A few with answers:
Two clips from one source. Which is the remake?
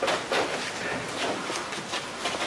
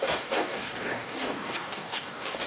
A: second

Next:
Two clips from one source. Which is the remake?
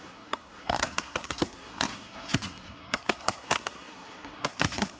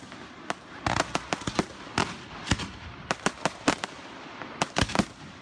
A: first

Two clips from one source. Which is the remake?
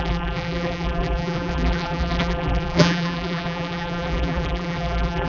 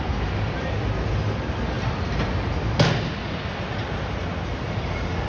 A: first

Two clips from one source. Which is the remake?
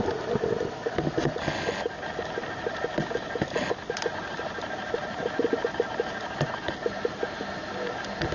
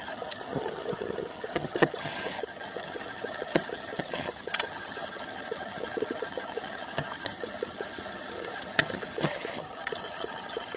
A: second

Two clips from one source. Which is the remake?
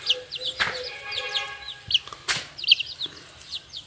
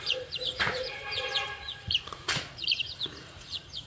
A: second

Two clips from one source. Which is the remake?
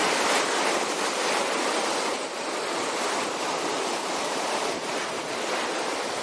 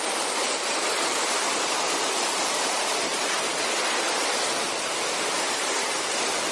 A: second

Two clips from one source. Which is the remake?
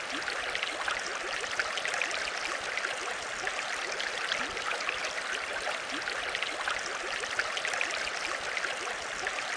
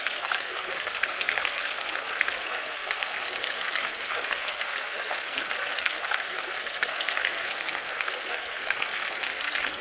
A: second